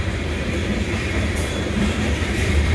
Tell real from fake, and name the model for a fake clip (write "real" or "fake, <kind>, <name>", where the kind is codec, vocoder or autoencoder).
fake, vocoder, BigVGAN v2